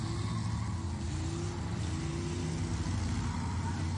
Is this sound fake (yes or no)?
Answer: no